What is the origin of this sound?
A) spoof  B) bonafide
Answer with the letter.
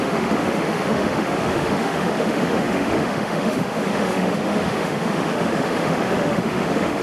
A